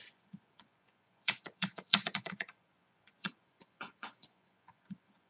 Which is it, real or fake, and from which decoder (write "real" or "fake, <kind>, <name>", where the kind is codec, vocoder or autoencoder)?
fake, vocoder, Vocos